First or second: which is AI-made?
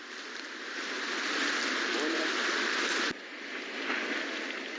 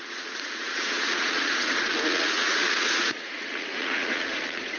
second